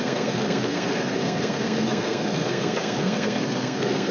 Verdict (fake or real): fake